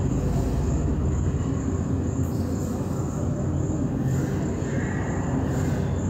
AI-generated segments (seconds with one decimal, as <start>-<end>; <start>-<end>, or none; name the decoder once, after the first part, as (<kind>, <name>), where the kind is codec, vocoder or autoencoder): none